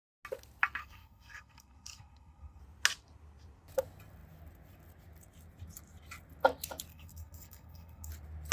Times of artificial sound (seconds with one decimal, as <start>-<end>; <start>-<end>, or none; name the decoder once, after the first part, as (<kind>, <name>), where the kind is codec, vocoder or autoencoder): 0.8-2.6 (codec, SNAC); 6.9-8.1